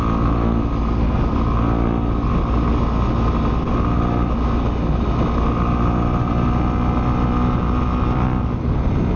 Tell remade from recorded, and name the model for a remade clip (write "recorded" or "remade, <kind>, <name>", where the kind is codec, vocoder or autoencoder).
recorded